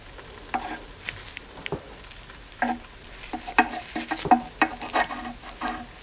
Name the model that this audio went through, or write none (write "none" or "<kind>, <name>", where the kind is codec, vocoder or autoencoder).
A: none